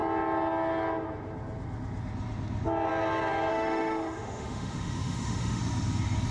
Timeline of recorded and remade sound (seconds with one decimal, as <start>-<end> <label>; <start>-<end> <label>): 0.0-3.5 recorded; 3.5-5.6 remade; 5.6-6.3 recorded